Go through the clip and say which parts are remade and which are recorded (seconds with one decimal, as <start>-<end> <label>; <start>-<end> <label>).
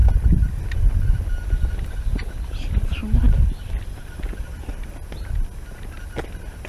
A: 0.0-6.7 recorded